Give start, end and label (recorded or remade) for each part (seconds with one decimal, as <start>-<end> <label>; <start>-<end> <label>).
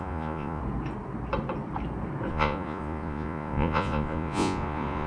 0.0-0.6 remade; 0.6-2.3 recorded; 2.3-5.1 remade